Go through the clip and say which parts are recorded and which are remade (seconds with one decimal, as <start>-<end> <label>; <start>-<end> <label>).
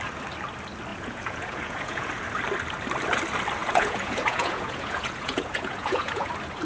0.0-0.9 recorded; 0.9-2.1 remade; 2.1-3.6 recorded; 3.6-6.3 remade; 6.3-6.7 recorded